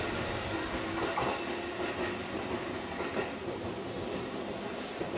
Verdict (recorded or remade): recorded